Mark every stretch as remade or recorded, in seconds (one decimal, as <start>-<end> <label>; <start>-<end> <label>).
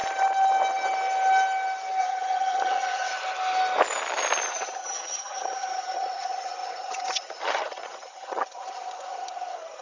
0.0-2.0 recorded; 2.0-3.1 remade; 3.1-4.5 recorded; 4.5-9.8 remade